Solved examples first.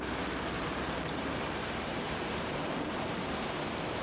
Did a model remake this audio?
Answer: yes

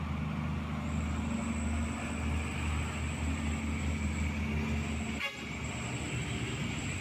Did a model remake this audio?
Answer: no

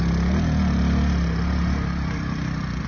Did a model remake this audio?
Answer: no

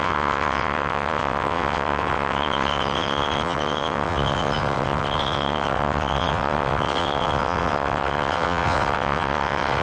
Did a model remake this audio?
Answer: yes